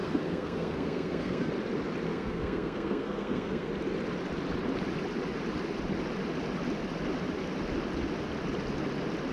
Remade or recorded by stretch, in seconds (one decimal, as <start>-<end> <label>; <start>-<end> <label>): 0.0-1.5 remade; 1.5-2.1 recorded; 2.1-3.7 remade; 3.7-9.3 recorded